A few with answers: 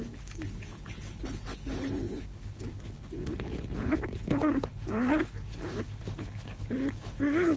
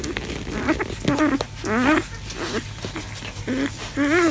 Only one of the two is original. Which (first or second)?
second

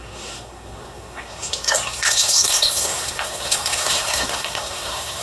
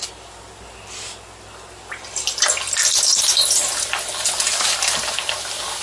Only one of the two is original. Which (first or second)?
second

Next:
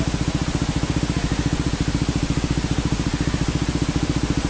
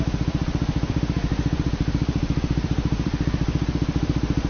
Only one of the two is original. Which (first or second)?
first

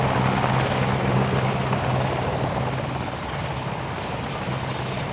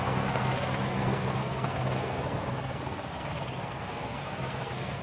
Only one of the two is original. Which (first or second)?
first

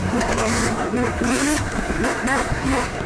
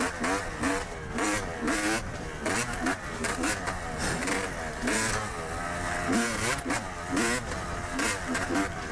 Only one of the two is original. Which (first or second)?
second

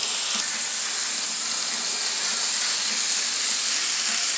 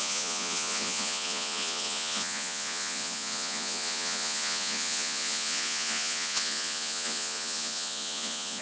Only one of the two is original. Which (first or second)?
first